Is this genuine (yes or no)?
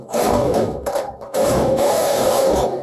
no